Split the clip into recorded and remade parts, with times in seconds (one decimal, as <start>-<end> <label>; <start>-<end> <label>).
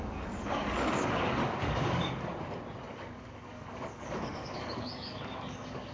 0.0-2.3 remade; 2.3-2.9 recorded; 2.9-5.9 remade